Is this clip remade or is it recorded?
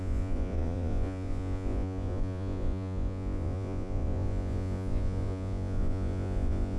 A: remade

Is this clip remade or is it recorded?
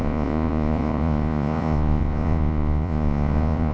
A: remade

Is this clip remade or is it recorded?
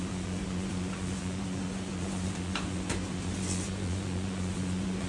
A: remade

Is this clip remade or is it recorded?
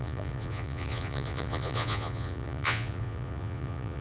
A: remade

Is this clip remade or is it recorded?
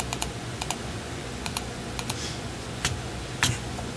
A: remade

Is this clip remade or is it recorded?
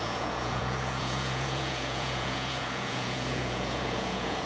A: remade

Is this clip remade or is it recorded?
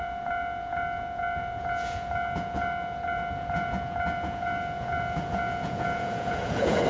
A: remade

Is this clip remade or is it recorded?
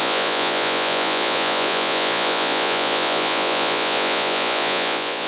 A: remade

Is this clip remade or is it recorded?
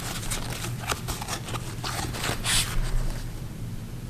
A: recorded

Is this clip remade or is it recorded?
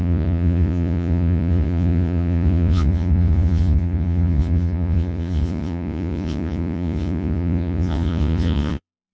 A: remade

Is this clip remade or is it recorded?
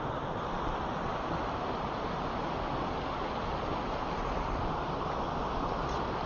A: recorded